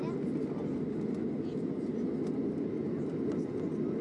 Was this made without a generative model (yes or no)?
yes